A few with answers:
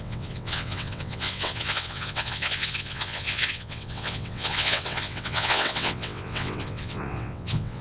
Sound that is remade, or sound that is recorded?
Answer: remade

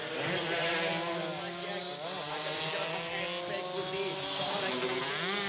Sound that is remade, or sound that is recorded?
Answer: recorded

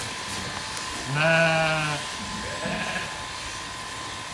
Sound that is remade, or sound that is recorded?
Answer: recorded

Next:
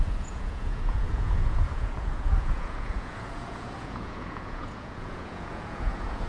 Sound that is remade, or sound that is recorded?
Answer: remade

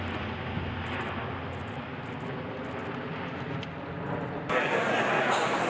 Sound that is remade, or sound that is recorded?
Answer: recorded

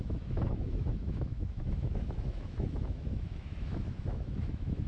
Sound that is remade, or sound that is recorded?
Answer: remade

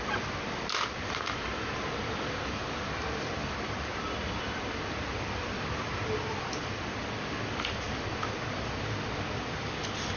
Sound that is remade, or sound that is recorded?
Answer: remade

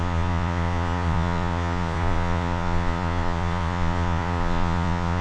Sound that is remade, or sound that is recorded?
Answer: remade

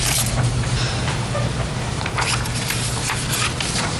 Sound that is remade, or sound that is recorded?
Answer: remade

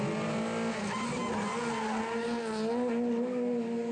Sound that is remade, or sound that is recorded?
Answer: recorded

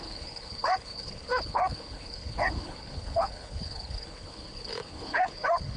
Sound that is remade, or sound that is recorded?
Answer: remade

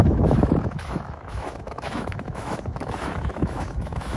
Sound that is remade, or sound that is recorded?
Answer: remade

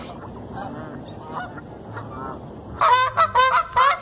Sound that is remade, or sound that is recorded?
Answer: recorded